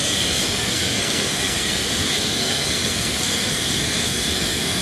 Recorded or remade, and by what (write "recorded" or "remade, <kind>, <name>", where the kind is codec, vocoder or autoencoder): remade, codec, SNAC